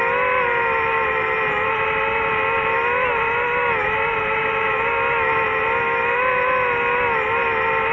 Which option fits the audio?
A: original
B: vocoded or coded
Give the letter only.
A